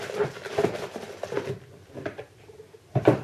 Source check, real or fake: fake